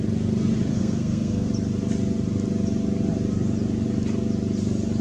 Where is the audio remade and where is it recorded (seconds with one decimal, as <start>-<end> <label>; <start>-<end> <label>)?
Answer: 0.0-0.7 recorded; 0.7-1.5 remade; 1.5-5.0 recorded